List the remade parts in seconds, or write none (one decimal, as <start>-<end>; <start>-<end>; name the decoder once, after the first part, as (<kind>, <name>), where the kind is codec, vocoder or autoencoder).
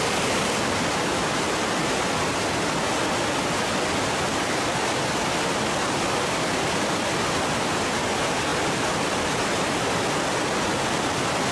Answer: none